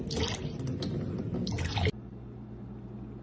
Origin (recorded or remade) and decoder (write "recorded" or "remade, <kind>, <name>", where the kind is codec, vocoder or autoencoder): recorded